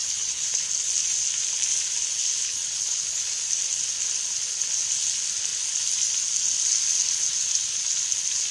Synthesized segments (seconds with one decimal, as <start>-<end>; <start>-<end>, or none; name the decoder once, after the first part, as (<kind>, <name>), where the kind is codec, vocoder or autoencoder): 0.0-0.7 (codec, HILCodec); 2.1-3.2